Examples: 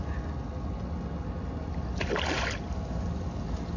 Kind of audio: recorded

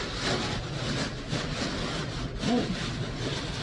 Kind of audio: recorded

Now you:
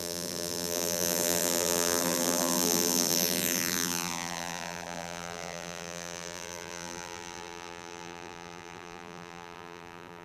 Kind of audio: remade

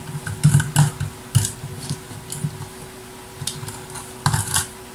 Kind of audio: recorded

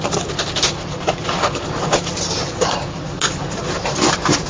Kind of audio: recorded